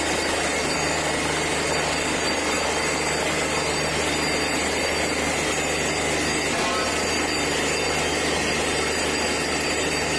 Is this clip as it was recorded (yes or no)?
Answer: yes